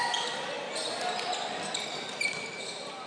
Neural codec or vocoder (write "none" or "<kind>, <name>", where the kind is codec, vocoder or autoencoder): none